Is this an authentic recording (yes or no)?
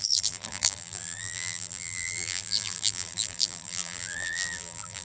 no